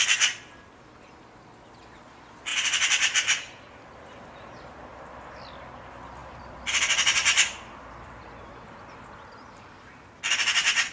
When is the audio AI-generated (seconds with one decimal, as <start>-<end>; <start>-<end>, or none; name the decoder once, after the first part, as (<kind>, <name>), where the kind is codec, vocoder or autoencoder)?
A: 2.5-5.5 (vocoder, BigVGAN v2); 6.2-10.2